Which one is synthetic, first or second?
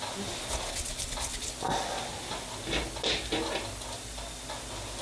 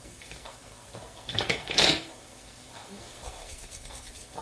second